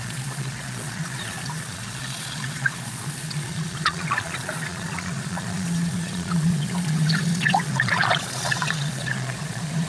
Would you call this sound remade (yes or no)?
yes